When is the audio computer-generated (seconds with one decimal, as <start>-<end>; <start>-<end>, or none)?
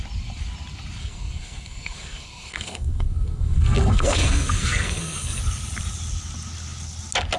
1.0-5.4